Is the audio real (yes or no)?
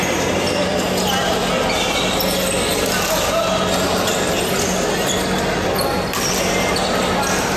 yes